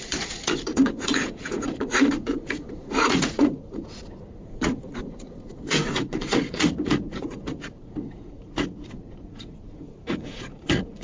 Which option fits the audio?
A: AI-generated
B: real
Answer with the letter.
A